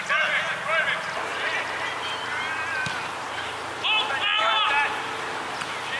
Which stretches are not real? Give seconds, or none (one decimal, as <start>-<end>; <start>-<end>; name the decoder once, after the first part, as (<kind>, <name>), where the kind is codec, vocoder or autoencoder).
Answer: none